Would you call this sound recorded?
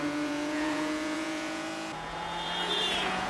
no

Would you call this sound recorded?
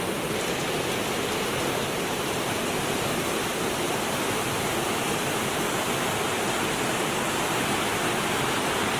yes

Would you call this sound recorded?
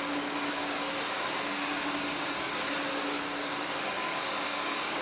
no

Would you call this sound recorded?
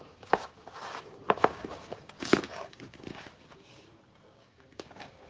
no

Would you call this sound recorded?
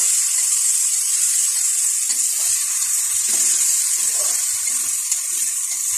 no